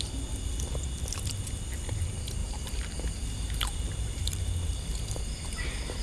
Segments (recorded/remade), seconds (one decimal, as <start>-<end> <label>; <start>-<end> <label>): 0.0-2.4 recorded; 2.4-4.9 remade; 4.9-6.0 recorded